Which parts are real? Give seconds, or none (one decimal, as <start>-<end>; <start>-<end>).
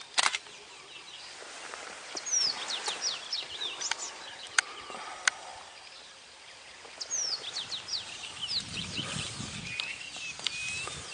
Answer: 0.0-11.1